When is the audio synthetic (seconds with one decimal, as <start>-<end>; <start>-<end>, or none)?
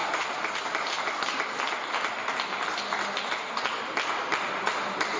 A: 0.0-0.6